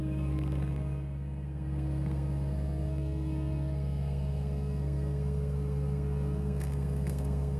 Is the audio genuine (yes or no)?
no